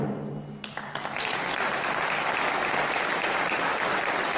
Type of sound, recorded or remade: recorded